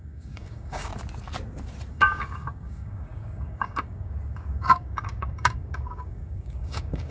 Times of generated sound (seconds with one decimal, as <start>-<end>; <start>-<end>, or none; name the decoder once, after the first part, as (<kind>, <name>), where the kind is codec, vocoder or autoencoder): 0.0-0.9 (codec, DAC); 1.9-7.1